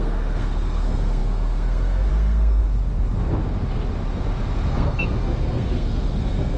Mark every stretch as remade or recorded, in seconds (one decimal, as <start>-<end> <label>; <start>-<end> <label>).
0.0-2.6 remade; 2.6-4.7 recorded; 4.7-6.6 remade